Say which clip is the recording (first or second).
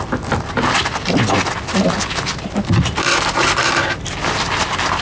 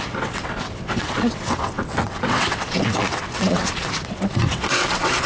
first